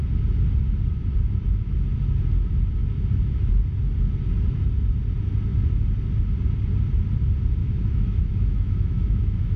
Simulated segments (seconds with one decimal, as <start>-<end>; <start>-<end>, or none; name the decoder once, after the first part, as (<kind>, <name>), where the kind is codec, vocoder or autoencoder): 2.8-3.5 (autoencoder, DAC-VAE); 7.6-9.6